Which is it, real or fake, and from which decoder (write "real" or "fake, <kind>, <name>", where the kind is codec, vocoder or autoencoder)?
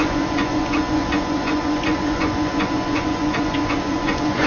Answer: fake, vocoder, Vocos